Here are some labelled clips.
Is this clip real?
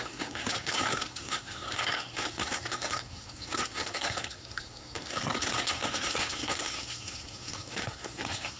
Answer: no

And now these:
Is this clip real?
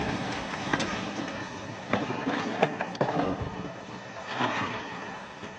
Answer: no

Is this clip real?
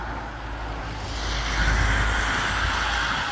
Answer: yes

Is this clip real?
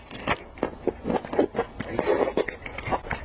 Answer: yes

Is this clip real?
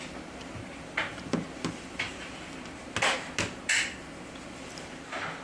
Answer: yes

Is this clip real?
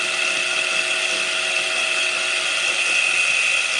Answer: yes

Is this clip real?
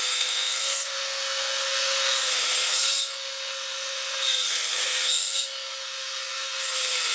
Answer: no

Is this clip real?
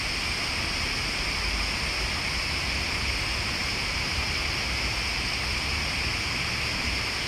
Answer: yes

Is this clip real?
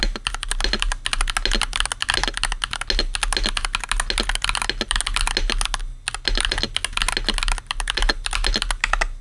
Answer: yes